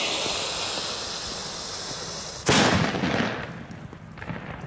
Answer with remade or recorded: recorded